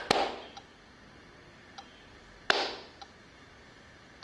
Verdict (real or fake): real